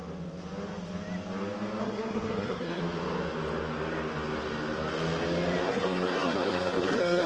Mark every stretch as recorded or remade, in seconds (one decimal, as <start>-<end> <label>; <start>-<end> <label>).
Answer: 0.0-1.8 recorded; 1.8-2.8 remade; 2.8-5.6 recorded; 5.6-7.3 remade